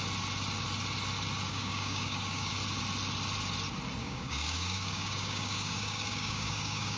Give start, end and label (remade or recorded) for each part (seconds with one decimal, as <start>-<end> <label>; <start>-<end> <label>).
0.0-1.5 recorded; 1.5-2.5 remade; 2.5-4.0 recorded; 4.0-7.0 remade